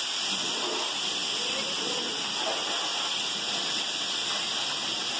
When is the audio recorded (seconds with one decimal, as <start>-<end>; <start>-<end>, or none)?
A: 0.0-5.2

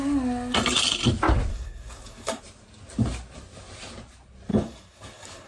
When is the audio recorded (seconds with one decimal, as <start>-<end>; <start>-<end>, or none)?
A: 0.0-1.5; 2.4-4.5

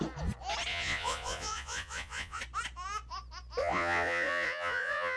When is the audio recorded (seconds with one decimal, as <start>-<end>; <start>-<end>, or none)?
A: 0.0-0.7; 2.4-3.6

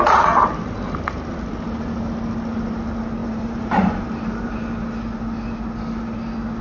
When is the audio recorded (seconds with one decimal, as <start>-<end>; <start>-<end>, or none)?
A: 0.0-3.2; 4.5-6.6

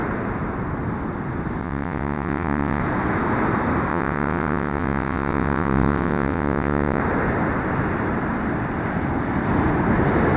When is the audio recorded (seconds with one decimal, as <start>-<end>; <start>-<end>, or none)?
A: 0.0-1.6; 2.8-3.9; 7.0-10.4